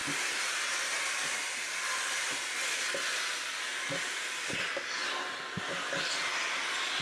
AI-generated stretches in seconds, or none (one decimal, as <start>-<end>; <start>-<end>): none

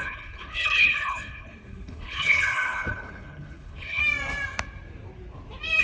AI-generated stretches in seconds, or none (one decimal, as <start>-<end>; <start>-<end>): 0.0-4.0